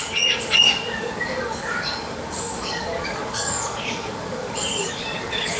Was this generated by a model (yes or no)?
yes